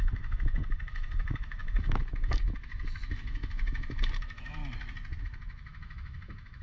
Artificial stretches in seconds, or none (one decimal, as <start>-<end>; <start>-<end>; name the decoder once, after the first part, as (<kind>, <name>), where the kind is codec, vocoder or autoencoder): 0.0-4.6 (autoencoder, DAC-VAE); 5.2-6.6